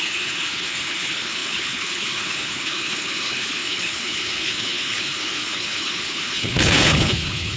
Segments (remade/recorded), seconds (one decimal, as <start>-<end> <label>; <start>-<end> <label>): 0.0-7.6 remade